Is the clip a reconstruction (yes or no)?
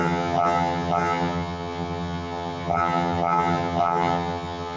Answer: yes